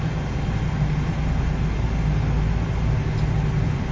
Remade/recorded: recorded